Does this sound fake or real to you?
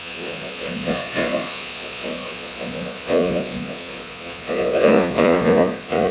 fake